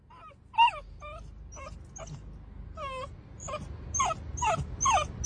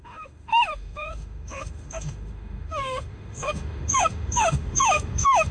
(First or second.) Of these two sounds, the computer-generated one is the second